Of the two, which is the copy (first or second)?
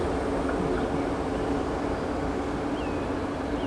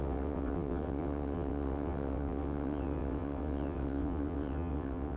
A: second